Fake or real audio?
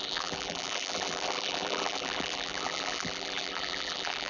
fake